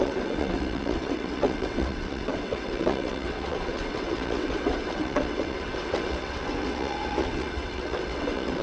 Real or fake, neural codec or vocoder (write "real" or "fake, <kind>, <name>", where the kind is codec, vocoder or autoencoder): fake, vocoder, WaveNeXt